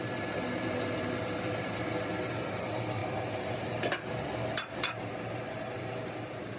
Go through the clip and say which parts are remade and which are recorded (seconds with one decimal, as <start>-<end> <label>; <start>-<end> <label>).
0.0-6.6 recorded